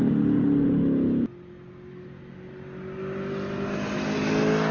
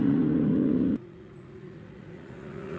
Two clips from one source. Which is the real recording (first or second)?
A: first